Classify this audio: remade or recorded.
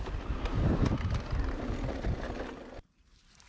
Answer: recorded